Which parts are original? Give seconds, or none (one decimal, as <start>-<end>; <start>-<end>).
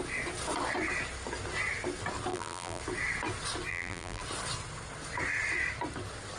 0.0-2.3; 2.8-3.7; 4.2-6.4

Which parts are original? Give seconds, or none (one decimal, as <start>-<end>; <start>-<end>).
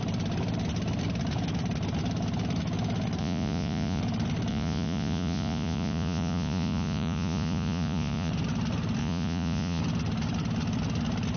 0.0-3.2; 4.0-4.5; 8.3-9.0; 9.8-11.4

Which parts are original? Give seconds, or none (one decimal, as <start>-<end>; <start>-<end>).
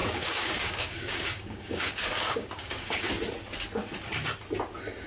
3.1-5.1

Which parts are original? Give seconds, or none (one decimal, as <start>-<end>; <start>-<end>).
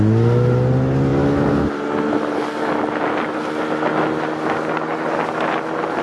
0.0-6.0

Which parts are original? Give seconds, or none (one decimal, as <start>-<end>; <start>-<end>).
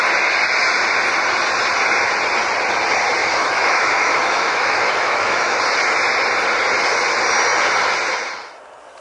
0.0-3.2; 5.6-9.0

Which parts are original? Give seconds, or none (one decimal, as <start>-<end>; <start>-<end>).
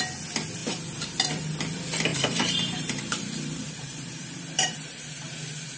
0.0-0.6; 1.6-2.1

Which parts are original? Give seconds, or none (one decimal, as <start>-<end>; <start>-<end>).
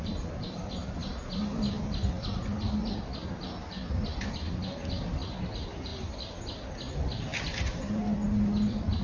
0.0-9.0